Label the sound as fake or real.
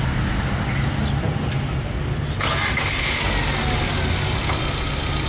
real